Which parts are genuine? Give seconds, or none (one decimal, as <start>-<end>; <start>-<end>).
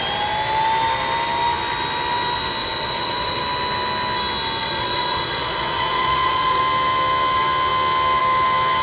0.0-2.6; 3.4-4.6; 6.6-8.8